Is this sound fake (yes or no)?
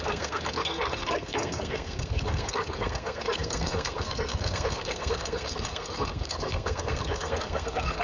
yes